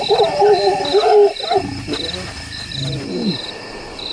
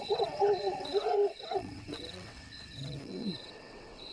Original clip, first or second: first